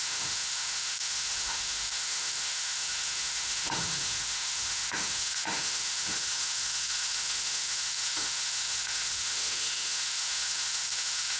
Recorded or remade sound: remade